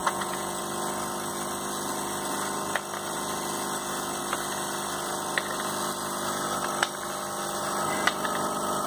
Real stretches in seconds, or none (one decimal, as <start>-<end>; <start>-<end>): 0.6-8.9